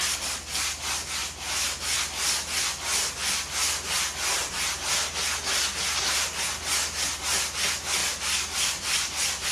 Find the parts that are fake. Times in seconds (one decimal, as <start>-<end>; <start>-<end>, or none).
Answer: 8.0-9.5